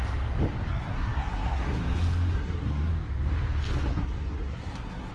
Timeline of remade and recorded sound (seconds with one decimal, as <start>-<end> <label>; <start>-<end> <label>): 0.0-0.7 recorded; 0.7-1.8 remade; 1.8-2.3 recorded; 2.3-2.9 remade; 2.9-3.9 recorded; 3.9-5.1 remade